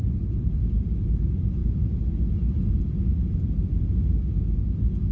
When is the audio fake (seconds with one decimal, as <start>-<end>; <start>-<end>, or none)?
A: none